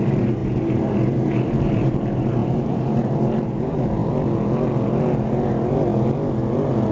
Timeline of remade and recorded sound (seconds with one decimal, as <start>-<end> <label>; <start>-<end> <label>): 0.0-4.0 remade; 4.0-5.2 recorded; 5.2-5.9 remade; 5.9-6.9 recorded